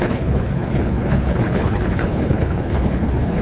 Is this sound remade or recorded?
remade